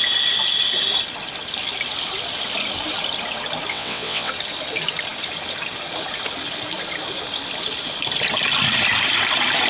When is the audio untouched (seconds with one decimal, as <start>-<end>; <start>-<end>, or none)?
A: 0.0-3.7; 4.3-9.7